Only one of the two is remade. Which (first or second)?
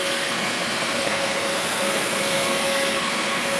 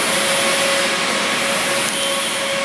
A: first